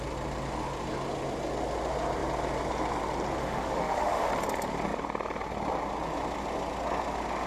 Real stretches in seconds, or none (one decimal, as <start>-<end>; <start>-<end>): 0.0-3.4; 4.3-7.5